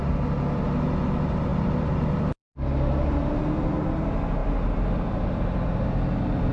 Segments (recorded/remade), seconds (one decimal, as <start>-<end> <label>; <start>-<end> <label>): 0.0-1.5 recorded; 1.5-3.9 remade; 3.9-4.4 recorded; 4.4-6.5 remade